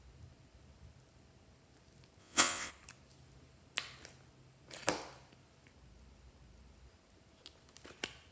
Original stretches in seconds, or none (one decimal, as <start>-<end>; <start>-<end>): 0.0-2.2; 2.7-8.3